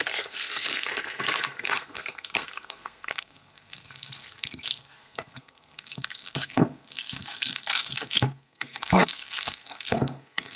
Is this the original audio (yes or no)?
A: no